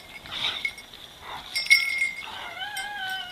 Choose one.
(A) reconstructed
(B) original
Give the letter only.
B